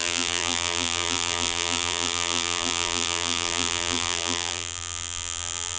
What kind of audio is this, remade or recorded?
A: remade